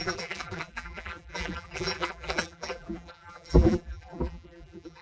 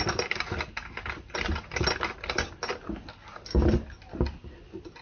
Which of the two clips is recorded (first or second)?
second